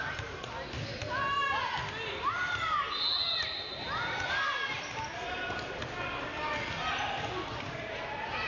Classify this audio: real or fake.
real